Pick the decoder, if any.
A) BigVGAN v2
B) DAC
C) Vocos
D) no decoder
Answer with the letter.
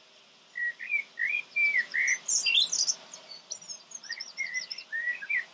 D